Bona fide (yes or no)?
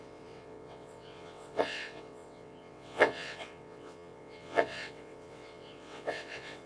no